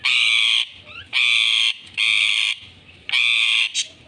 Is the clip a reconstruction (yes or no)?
no